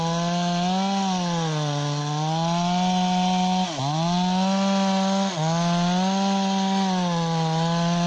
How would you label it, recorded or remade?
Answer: recorded